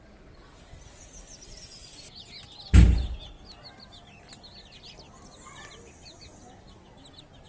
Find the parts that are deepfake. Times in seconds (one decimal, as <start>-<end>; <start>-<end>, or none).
none

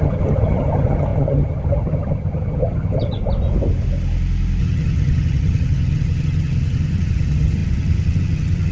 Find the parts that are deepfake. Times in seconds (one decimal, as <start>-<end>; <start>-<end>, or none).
0.0-3.2; 4.6-8.7

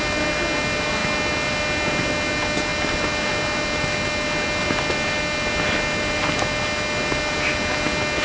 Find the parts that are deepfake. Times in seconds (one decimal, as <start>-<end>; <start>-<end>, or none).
none

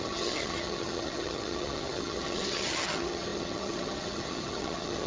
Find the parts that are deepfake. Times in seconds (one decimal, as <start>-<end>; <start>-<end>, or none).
0.0-5.1

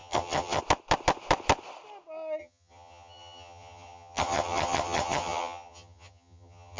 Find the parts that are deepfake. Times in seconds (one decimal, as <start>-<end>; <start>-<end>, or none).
0.0-0.6; 2.4-6.8